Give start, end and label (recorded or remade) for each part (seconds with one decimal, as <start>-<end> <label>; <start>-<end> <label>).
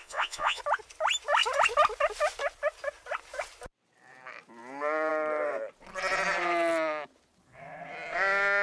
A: 0.0-0.6 remade; 0.6-8.6 recorded